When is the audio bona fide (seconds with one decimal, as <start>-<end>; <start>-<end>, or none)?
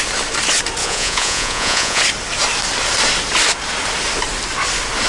0.0-0.8; 2.0-5.1